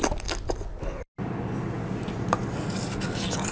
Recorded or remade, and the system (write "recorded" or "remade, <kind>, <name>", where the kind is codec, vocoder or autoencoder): recorded